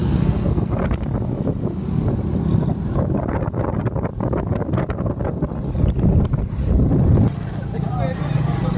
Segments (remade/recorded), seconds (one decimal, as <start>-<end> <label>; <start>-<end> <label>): 0.0-0.7 remade; 0.7-8.8 recorded